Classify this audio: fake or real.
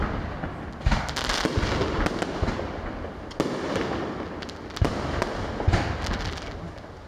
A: real